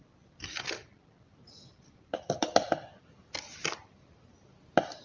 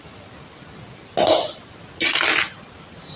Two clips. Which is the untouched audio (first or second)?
second